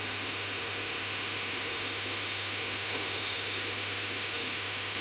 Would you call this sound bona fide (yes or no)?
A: no